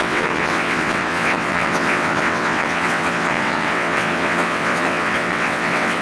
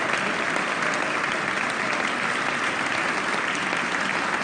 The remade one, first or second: first